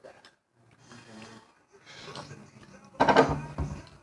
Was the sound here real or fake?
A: real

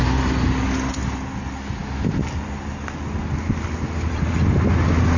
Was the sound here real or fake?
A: real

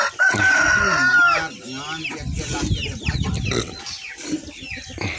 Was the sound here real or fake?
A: real